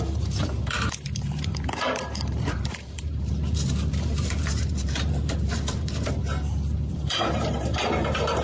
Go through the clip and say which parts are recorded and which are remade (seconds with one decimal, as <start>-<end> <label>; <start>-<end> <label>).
0.0-6.2 remade; 6.2-6.9 recorded; 6.9-8.4 remade